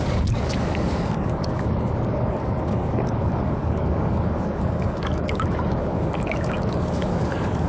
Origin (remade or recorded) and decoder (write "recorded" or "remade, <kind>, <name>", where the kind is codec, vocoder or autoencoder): remade, codec, DAC